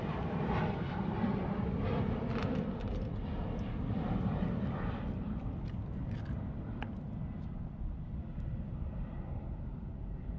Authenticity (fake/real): fake